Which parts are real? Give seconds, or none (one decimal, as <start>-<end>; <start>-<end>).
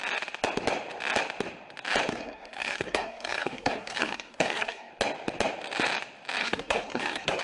0.0-2.1; 4.9-6.4